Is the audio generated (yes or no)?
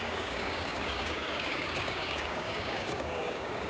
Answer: yes